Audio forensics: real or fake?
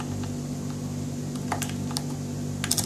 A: real